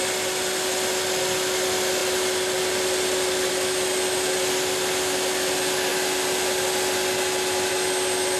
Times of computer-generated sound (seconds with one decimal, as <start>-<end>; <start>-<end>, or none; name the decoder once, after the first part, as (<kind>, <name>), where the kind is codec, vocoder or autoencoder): none